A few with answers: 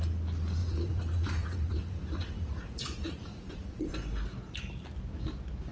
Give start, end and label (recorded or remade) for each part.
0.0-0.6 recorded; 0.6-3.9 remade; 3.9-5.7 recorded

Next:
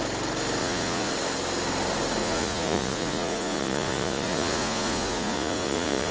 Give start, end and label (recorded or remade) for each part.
0.0-0.6 recorded; 0.6-1.1 remade; 1.1-2.2 recorded; 2.2-6.1 remade

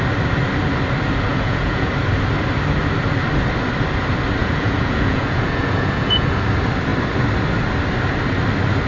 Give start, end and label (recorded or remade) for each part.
0.0-1.3 recorded; 1.3-1.9 remade; 1.9-4.4 recorded; 4.4-6.4 remade; 6.4-8.9 recorded

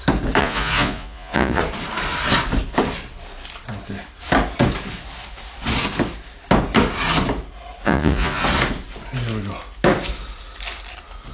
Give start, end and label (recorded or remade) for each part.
0.0-0.4 recorded; 0.4-1.6 remade; 1.6-7.8 recorded; 7.8-8.4 remade; 8.4-11.3 recorded

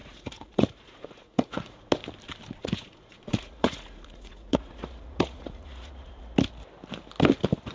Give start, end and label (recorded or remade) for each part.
0.0-1.9 remade; 1.9-2.6 recorded; 2.6-6.2 remade; 6.2-7.7 recorded